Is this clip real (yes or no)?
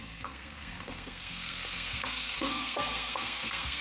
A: no